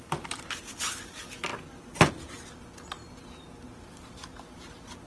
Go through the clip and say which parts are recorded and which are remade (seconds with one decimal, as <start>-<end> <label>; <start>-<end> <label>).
0.0-5.1 recorded